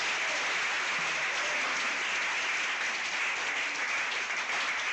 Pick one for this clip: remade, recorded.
recorded